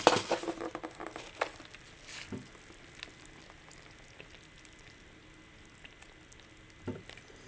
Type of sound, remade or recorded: recorded